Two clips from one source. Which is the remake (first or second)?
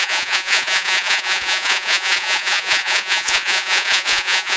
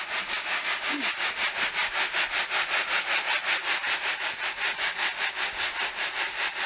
first